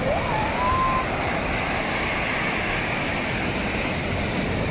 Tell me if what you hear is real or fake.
real